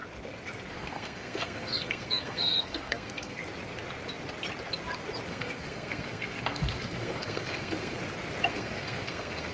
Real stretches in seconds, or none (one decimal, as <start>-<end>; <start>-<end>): 0.0-0.7; 3.4-5.3; 8.0-8.5